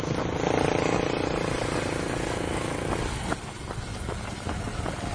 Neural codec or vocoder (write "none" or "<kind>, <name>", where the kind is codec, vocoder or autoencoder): none